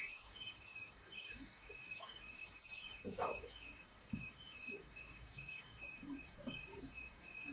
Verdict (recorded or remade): remade